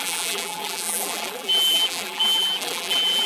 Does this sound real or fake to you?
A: fake